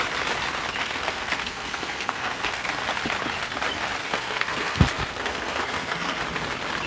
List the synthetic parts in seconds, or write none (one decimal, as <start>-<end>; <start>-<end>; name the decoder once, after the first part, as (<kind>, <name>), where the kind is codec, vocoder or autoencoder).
0.8-2.7 (codec, SNAC); 4.0-6.2